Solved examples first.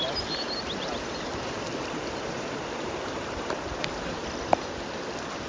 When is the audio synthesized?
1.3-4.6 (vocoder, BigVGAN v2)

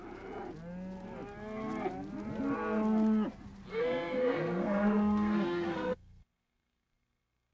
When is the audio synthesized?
3.7-7.5 (codec, SNAC)

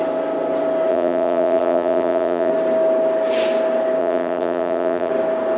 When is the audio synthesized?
0.9-2.5 (vocoder, BigVGAN v2); 4.0-5.1

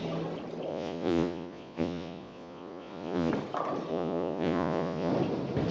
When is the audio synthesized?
0.7-3.3 (vocoder, Vocos); 3.9-5.1